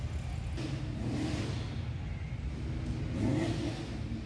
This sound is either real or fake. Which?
real